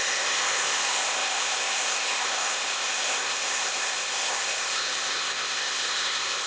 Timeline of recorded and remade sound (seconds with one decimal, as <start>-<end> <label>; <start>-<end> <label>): 0.0-6.5 remade